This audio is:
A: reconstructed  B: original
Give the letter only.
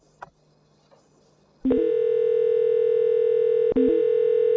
B